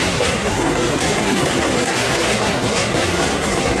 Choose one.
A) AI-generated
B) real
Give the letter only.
A